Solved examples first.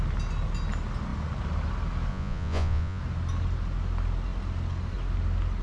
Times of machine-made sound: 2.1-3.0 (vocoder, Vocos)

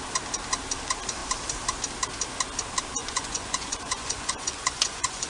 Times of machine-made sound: 3.0-5.3 (vocoder, Vocos)